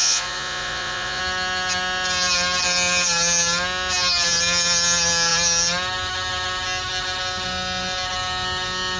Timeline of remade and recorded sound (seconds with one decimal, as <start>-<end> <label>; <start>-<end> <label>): 0.0-1.2 remade; 1.2-9.0 recorded